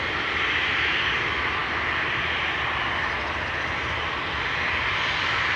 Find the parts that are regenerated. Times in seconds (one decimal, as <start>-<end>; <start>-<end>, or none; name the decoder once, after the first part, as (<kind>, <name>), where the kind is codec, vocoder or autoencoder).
none